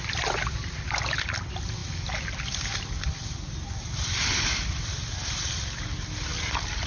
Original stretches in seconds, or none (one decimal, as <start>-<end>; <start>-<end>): 0.0-6.9